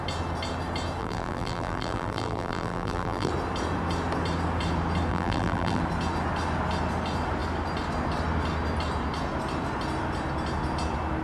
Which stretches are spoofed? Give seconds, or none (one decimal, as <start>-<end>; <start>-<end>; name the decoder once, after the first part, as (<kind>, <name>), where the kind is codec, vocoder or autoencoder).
1.0-3.3 (vocoder, BigVGAN v2); 5.1-5.8